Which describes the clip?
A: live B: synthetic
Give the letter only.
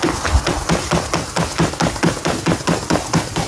A